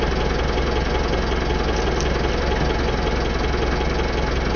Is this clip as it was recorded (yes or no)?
yes